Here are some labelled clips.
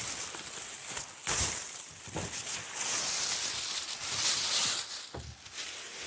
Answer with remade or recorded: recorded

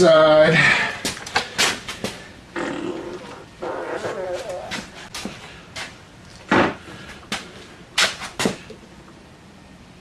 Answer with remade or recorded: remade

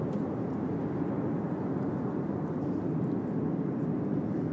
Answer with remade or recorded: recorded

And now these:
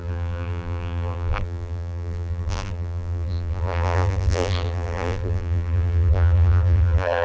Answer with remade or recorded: remade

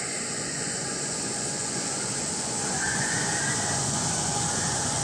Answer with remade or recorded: remade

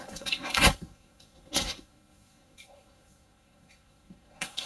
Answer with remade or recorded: remade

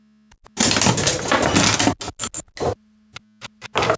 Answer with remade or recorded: recorded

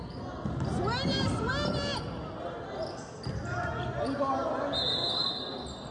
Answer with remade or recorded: recorded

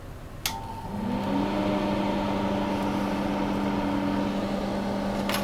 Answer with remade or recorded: recorded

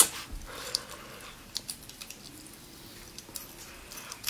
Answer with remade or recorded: remade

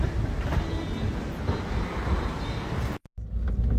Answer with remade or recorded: recorded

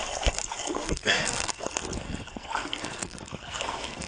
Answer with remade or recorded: remade